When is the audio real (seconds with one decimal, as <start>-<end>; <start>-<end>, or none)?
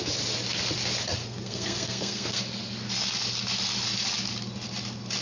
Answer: 0.0-1.2; 2.4-5.2